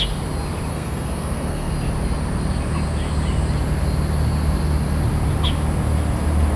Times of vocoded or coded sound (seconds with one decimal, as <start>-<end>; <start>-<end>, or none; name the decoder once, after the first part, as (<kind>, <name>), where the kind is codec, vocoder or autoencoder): 0.7-1.7 (codec, SNAC)